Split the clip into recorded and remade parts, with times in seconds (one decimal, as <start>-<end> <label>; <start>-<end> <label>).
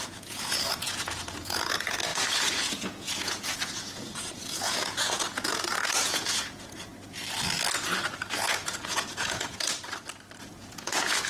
0.0-6.9 remade; 6.9-8.3 recorded; 8.3-9.7 remade; 9.7-10.4 recorded; 10.4-11.3 remade